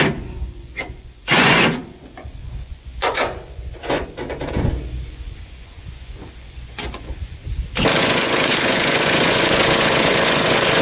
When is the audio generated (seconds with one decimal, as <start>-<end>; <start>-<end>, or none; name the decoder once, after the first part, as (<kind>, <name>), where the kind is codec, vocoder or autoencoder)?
0.0-7.4 (vocoder, Vocos); 8.0-10.8